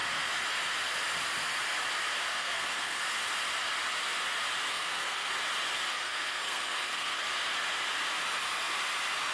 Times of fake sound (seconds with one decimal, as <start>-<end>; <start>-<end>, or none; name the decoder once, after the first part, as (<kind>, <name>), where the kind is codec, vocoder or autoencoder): 2.3-3.0 (codec, SNAC); 4.7-5.3; 5.9-7.3